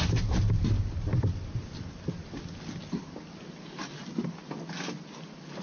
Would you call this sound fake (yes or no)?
no